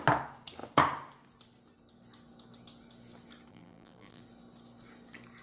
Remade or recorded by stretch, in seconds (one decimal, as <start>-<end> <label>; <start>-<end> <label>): 0.0-3.5 recorded; 3.5-4.2 remade; 4.2-5.4 recorded